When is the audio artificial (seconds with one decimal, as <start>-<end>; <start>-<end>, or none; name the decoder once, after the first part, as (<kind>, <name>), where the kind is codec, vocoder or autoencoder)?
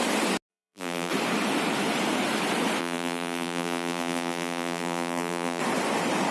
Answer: 0.5-1.1 (vocoder, BigVGAN v2); 2.8-5.6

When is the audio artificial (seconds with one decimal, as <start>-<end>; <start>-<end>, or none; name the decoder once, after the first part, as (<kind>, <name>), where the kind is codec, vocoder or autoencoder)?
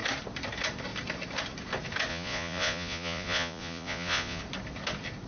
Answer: 2.1-4.4 (vocoder, Vocos)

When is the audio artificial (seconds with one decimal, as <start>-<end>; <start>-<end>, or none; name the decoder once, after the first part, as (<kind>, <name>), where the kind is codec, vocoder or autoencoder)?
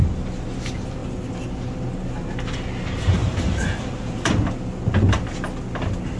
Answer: none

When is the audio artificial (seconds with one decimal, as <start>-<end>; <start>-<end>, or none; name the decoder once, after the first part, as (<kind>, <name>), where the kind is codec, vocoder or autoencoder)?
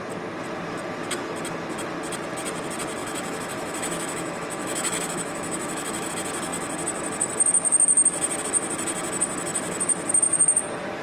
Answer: 3.0-6.1 (autoencoder, DAC-VAE)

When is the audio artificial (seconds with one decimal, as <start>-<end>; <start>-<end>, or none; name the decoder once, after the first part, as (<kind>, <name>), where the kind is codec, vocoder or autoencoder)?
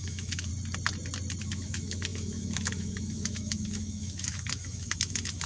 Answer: 0.0-0.5 (autoencoder, DAC-VAE); 1.4-5.5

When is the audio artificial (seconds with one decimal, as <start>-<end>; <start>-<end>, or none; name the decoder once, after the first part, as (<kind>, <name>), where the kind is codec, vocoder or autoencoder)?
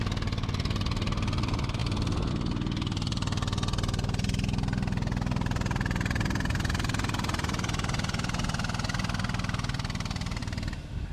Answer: none